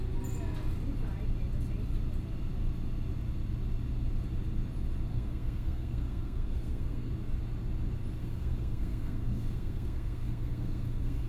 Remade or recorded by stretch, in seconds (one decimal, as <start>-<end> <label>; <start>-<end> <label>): 0.0-5.1 recorded; 5.1-7.1 remade; 7.1-8.2 recorded; 8.2-11.3 remade